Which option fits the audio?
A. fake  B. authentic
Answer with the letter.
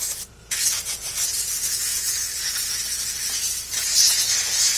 A